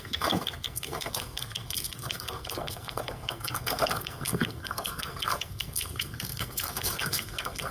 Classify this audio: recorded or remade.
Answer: remade